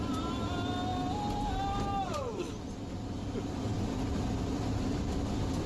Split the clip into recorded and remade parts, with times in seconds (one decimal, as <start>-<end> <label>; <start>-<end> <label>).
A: 0.0-5.7 recorded